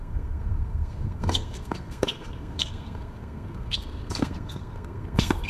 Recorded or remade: remade